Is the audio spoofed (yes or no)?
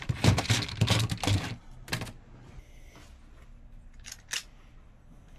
no